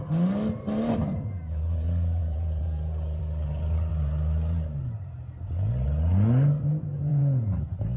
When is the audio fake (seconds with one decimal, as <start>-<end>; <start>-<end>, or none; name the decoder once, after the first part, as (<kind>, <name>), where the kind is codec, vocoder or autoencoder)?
2.2-3.2 (vocoder, Vocos); 7.1-8.0